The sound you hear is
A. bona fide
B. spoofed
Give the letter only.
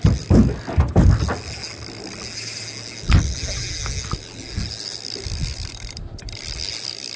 A